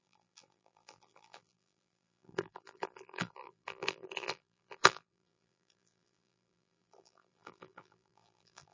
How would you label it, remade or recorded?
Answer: remade